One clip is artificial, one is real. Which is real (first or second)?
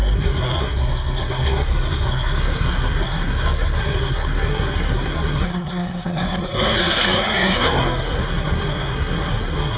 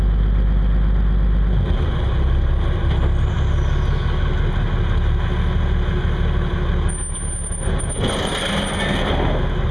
second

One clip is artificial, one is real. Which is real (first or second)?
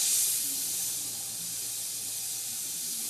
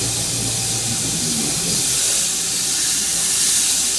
first